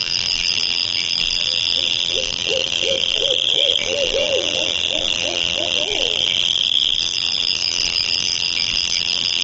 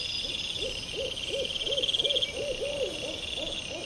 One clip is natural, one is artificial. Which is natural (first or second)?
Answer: second